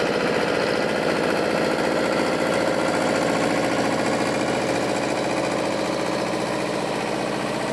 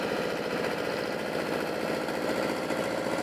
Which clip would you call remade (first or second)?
second